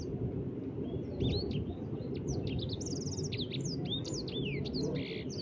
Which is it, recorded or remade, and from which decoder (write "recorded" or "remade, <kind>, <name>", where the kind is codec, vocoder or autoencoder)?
recorded